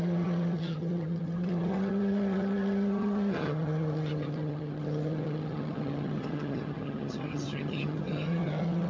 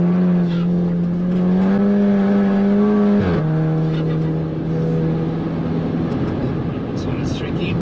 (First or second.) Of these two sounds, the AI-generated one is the first